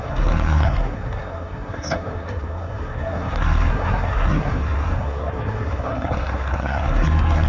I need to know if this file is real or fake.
fake